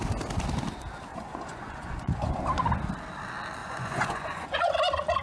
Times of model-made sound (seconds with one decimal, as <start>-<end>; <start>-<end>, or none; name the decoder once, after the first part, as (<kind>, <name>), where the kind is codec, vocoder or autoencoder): 1.1-2.4 (vocoder, Vocos); 3.6-4.7